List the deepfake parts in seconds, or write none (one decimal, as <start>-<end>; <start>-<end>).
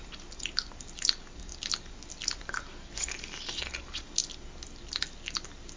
none